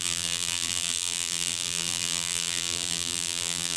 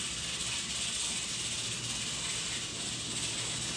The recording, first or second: second